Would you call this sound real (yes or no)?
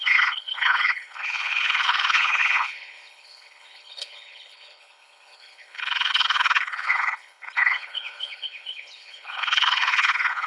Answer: no